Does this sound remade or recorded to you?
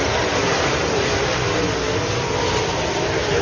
recorded